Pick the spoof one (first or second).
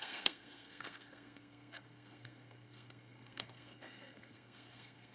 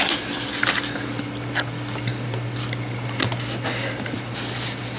first